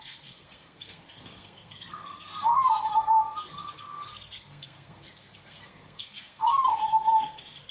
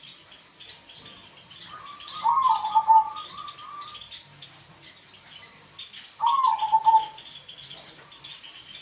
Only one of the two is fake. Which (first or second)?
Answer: first